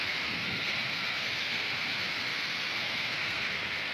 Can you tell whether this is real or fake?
fake